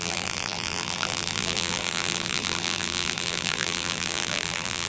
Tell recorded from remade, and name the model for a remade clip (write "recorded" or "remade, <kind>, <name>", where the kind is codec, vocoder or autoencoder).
remade, vocoder, BigVGAN v2